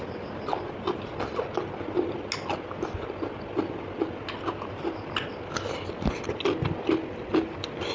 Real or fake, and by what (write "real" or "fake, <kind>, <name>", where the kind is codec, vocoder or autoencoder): real